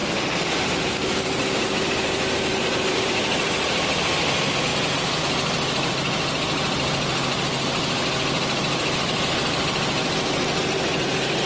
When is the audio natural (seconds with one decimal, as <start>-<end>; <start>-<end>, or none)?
0.0-11.5